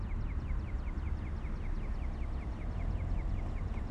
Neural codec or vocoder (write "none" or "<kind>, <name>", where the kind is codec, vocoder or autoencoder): none